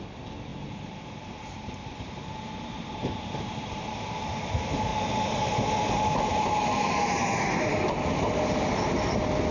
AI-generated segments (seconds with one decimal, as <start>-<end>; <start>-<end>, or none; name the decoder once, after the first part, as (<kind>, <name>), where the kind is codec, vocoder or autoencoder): 0.5-4.2 (vocoder, BigVGAN v2)